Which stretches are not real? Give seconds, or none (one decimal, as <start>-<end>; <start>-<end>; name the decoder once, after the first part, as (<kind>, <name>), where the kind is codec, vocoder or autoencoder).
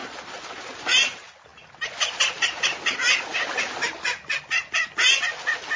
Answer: none